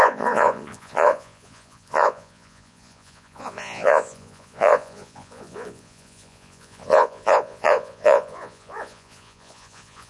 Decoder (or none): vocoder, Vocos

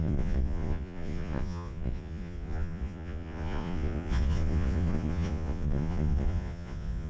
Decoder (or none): vocoder, Vocos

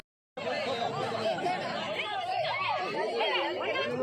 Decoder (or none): none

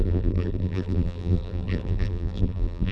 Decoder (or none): vocoder, BigVGAN v2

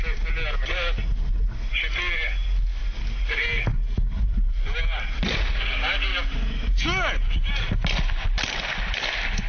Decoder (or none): none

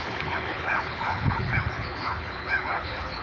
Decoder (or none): codec, HILCodec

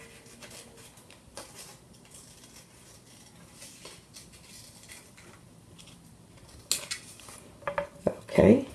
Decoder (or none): none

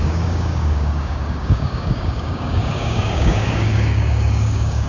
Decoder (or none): codec, DAC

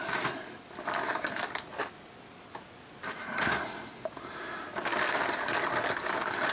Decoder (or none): none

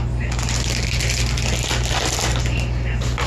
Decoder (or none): none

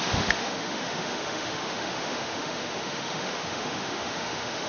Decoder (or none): autoencoder, DAC-VAE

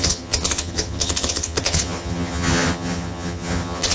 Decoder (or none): vocoder, HiFi-GAN